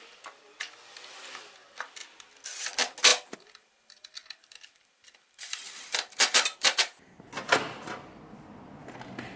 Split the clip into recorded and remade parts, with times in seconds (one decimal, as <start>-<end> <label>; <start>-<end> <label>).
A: 0.0-3.1 recorded; 3.1-7.2 remade; 7.2-9.4 recorded